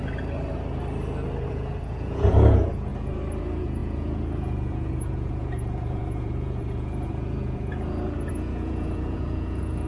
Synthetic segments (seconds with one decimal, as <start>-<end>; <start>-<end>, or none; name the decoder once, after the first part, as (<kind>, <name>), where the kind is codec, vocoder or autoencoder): 1.5-2.9 (vocoder, Vocos); 3.4-9.9